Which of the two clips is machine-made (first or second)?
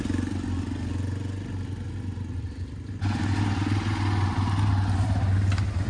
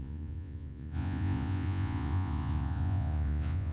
second